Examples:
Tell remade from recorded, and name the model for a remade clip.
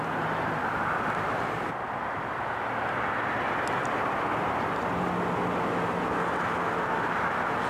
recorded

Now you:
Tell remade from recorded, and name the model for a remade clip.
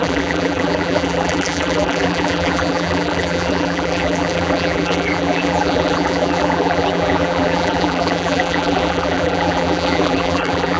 remade, vocoder, BigVGAN v2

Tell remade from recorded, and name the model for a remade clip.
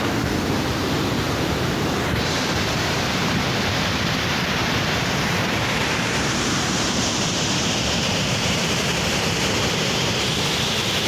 remade, vocoder, BigVGAN v2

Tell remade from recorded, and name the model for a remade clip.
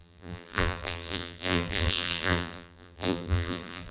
remade, vocoder, BigVGAN v2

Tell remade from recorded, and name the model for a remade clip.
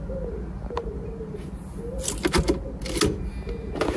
recorded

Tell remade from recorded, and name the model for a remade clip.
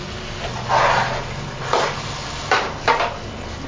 recorded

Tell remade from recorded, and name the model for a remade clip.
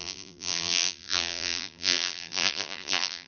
remade, vocoder, BigVGAN v2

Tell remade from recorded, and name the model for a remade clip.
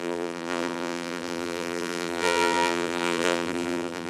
remade, vocoder, BigVGAN v2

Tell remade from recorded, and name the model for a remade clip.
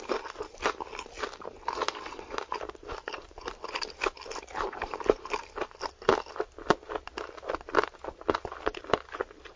recorded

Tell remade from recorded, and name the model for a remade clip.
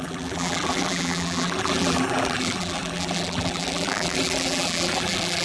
remade, vocoder, BigVGAN v2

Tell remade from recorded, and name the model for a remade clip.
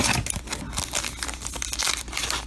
recorded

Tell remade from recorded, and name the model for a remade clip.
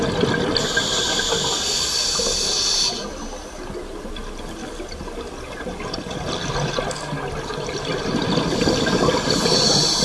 recorded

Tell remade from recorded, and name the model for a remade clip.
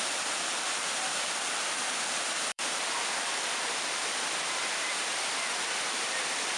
remade, vocoder, BigVGAN v2